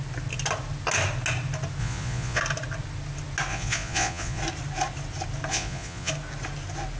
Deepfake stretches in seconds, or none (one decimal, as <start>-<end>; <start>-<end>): 1.8-2.4; 3.5-4.4; 5.5-6.1